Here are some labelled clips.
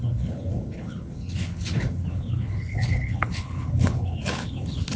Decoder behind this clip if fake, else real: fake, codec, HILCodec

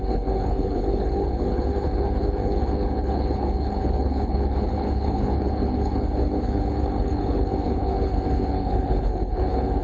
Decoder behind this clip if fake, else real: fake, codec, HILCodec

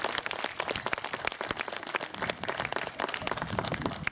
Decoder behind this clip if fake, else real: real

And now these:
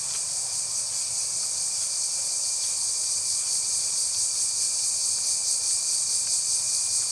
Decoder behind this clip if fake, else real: real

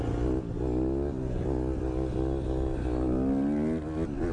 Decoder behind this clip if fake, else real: real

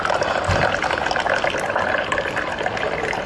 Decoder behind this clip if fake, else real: real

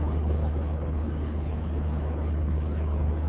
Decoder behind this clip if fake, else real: fake, codec, HILCodec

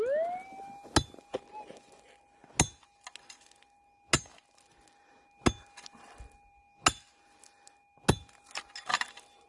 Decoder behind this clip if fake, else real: real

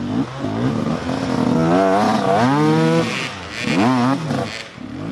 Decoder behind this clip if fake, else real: real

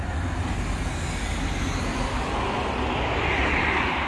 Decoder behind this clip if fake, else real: real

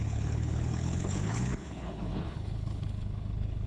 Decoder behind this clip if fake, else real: fake, codec, HILCodec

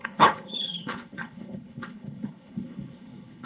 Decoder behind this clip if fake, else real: fake, codec, HILCodec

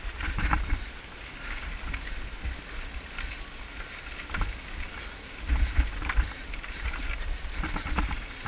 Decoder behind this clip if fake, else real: real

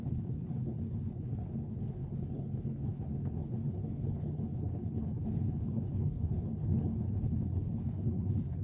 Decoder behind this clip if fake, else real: fake, codec, HILCodec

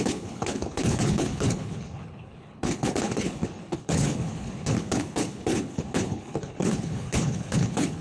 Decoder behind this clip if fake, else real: fake, codec, HILCodec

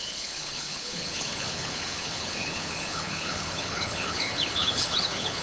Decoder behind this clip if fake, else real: fake, codec, HILCodec